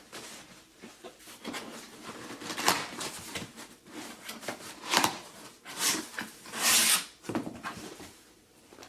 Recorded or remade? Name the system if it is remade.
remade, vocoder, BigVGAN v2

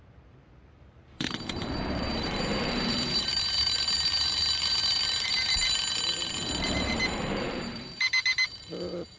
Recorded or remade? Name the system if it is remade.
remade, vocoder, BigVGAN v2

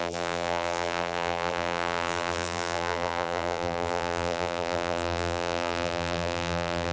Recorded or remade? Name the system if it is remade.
remade, vocoder, BigVGAN v2